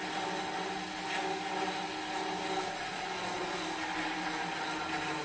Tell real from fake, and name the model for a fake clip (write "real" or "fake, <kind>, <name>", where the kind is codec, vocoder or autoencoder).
real